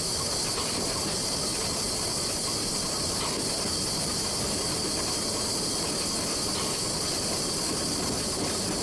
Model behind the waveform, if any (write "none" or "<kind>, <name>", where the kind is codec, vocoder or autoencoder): none